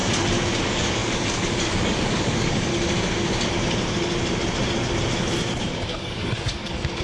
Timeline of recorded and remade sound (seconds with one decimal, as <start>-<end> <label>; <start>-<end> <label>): 0.0-0.6 recorded; 0.6-2.7 remade; 2.7-5.6 recorded; 5.6-7.0 remade